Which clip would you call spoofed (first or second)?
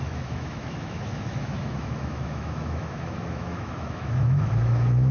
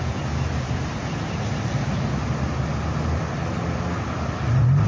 first